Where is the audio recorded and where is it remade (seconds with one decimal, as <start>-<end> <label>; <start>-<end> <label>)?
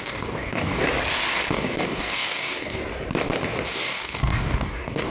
0.0-0.8 remade; 0.8-1.5 recorded; 1.5-2.8 remade; 2.8-3.7 recorded; 3.7-5.1 remade